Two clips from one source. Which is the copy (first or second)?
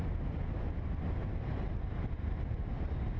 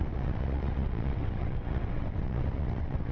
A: second